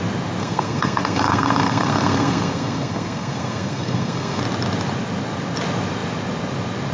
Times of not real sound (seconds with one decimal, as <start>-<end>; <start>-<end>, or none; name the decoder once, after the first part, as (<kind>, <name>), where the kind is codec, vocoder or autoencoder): 0.4-4.4 (codec, SNAC)